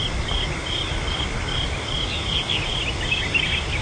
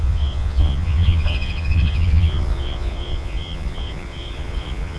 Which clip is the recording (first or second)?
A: first